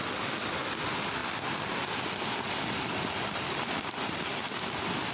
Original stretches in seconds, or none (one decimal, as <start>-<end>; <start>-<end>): 0.0-1.2; 2.4-5.1